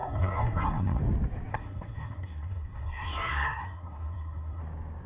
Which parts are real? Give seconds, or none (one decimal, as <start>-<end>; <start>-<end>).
1.0-1.5; 4.6-5.1

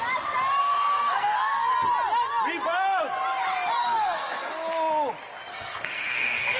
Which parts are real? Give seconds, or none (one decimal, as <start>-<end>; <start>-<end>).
0.0-0.6; 1.7-3.8; 4.5-5.5

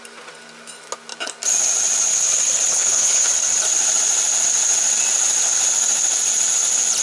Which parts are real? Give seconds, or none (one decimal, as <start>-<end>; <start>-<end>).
0.0-2.7; 3.3-7.0

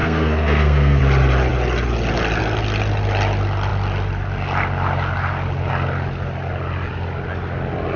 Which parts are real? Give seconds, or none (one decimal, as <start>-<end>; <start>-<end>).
1.0-8.0

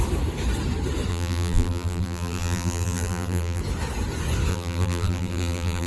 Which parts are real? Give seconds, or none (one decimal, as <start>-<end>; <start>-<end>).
0.0-1.1; 3.6-4.5

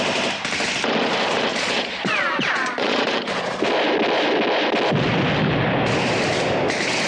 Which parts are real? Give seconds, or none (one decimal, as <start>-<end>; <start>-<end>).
0.0-1.5; 3.6-7.1

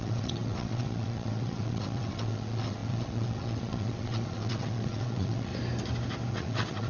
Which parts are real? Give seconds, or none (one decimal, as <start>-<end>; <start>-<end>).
5.5-6.3

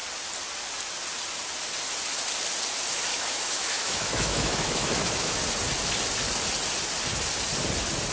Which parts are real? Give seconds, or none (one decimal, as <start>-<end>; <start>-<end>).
0.0-3.1; 5.4-8.1